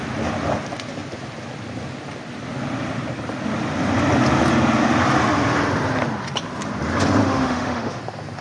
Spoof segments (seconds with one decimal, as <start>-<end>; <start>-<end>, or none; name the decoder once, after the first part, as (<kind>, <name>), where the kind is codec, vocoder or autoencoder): 7.2-8.0 (autoencoder, DAC-VAE)